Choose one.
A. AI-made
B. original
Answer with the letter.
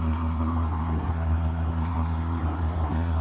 A